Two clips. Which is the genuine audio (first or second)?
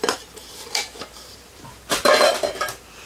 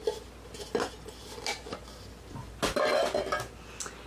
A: second